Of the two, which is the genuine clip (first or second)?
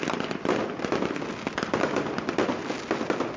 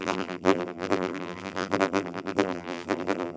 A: first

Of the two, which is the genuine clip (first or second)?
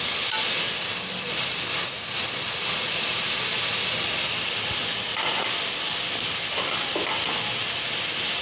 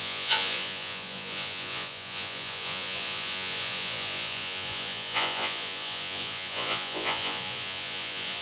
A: first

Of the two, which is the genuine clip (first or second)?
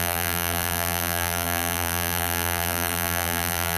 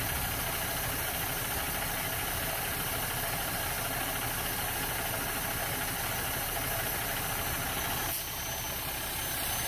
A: second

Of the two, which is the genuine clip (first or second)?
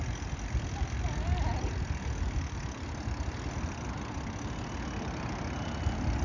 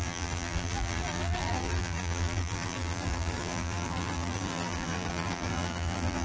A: first